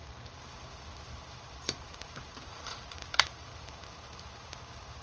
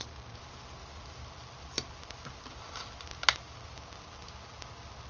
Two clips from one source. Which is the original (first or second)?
second